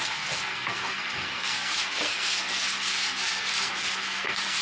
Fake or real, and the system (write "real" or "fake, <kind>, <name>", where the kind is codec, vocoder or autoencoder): fake, codec, SNAC